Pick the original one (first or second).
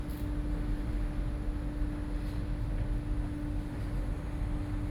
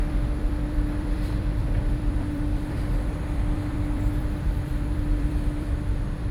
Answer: first